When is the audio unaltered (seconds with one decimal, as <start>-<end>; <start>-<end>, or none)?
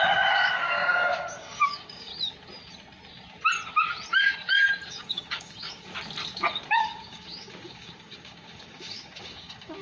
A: 2.1-4.9; 5.9-6.7